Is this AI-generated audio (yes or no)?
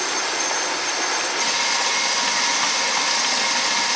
no